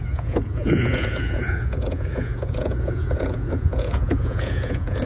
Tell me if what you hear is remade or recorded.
remade